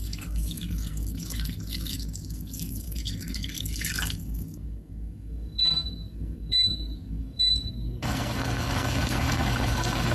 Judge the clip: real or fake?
fake